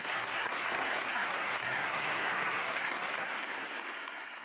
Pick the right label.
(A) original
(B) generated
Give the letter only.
B